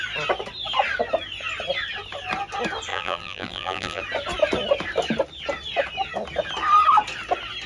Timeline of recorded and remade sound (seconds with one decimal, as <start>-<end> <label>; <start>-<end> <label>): 0.0-2.9 recorded; 2.9-4.0 remade; 4.0-7.7 recorded